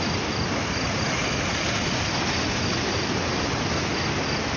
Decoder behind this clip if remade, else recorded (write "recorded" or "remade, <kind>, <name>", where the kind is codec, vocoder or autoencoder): recorded